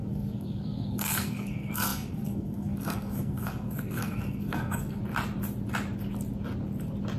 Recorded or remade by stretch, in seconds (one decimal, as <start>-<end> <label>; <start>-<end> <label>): 0.0-5.0 remade; 5.0-7.2 recorded